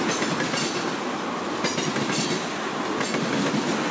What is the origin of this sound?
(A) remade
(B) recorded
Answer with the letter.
B